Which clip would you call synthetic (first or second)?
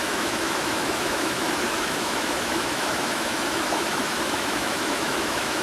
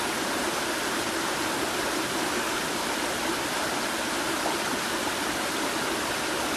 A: first